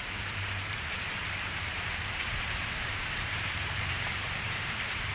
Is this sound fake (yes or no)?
yes